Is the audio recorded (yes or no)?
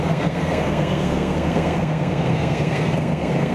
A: no